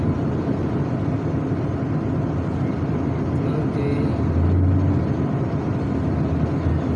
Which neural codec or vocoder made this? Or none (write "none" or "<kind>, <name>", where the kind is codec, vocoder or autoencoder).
none